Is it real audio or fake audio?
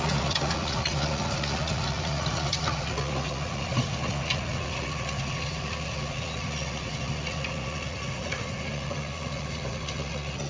fake